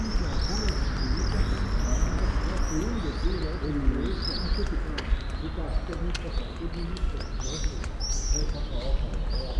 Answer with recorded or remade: recorded